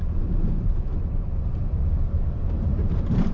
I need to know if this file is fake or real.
fake